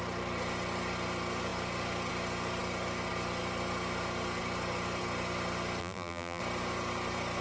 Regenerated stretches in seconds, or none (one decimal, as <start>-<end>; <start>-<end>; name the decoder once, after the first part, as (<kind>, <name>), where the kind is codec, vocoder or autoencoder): 5.8-6.4 (vocoder, BigVGAN v2)

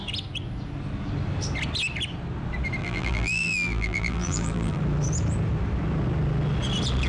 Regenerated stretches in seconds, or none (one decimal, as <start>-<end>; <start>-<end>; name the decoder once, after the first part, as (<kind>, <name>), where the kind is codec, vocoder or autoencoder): 2.8-4.8 (vocoder, BigVGAN v2)

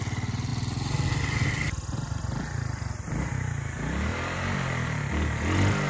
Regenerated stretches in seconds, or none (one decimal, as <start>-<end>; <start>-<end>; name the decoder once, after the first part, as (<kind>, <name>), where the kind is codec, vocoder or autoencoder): 0.5-3.2 (vocoder, BigVGAN v2); 4.1-5.9

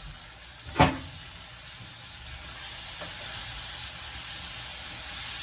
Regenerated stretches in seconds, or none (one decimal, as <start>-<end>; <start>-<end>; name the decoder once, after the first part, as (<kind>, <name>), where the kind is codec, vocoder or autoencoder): none

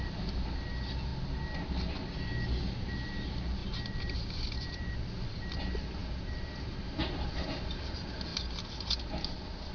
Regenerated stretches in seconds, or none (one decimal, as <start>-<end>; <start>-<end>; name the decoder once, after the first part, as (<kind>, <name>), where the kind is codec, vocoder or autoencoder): 0.0-1.1 (vocoder, BigVGAN v2); 2.6-8.3

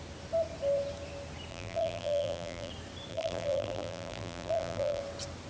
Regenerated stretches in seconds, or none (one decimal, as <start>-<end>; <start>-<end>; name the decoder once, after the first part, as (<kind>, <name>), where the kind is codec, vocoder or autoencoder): 1.5-2.7 (vocoder, BigVGAN v2); 3.1-5.0